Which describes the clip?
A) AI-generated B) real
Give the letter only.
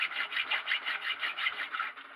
B